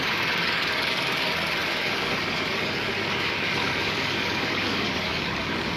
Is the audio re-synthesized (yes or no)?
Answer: yes